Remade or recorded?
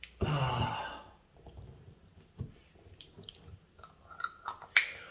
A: recorded